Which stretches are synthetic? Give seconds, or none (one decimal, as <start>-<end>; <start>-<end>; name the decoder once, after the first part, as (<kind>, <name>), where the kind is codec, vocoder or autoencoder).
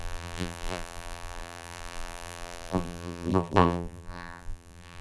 0.0-5.0 (vocoder, BigVGAN v2)